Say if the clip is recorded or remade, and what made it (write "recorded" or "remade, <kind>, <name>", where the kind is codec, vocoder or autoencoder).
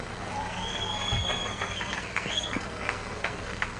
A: remade, codec, SNAC